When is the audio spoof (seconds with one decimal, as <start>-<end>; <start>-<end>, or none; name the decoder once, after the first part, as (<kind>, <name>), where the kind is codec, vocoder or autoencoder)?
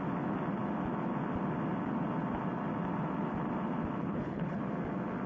4.0-4.6 (codec, HILCodec)